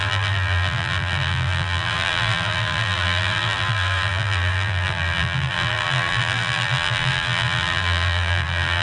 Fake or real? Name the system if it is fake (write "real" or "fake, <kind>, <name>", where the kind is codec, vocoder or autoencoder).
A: fake, vocoder, BigVGAN v2